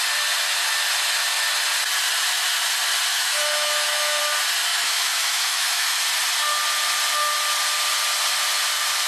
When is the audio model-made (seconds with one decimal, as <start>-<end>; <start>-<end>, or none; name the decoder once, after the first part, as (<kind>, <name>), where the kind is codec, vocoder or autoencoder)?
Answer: 3.1-4.2 (autoencoder, DAC-VAE); 4.7-6.0